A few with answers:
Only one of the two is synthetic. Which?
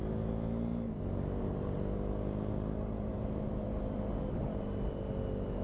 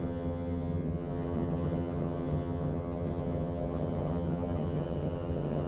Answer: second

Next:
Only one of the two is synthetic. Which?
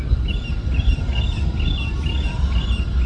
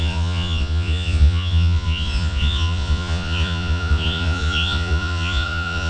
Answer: second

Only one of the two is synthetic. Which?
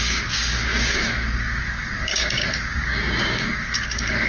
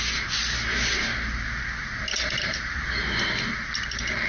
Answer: first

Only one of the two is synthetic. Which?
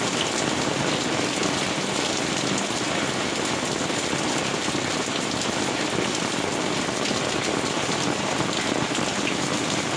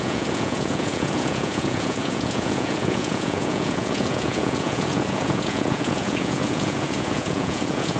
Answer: second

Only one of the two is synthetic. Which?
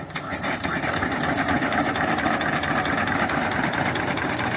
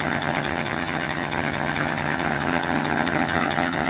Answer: second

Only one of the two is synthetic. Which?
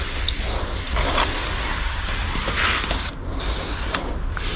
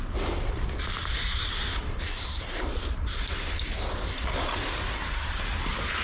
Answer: second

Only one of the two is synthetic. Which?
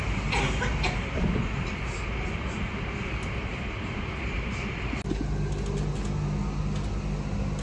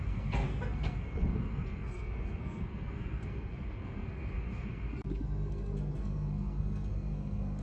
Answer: second